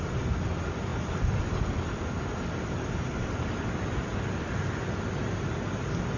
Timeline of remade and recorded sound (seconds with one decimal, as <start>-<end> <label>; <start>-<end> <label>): 0.0-6.2 recorded